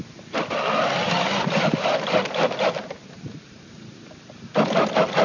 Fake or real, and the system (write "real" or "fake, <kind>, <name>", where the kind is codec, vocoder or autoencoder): real